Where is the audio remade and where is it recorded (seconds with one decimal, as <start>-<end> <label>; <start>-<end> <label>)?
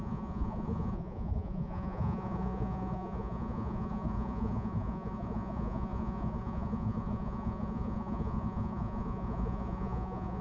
0.0-10.4 remade